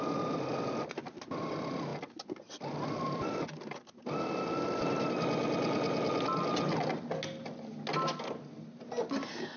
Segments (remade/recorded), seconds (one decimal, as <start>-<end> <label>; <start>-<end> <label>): 0.0-9.6 recorded